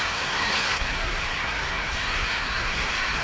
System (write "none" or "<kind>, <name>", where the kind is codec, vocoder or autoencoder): codec, SNAC